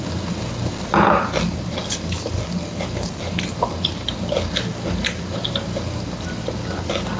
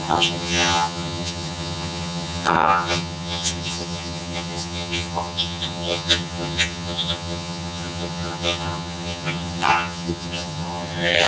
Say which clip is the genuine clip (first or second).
first